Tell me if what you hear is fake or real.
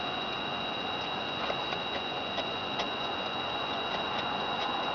fake